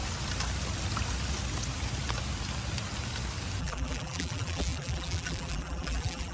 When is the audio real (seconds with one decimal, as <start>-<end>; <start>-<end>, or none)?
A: 0.0-3.6